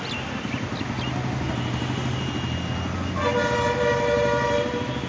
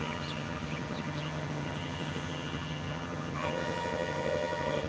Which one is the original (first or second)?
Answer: first